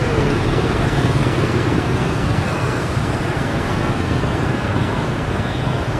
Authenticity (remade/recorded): remade